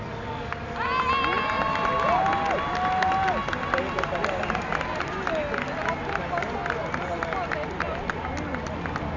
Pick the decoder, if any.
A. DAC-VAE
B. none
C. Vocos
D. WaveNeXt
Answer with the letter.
B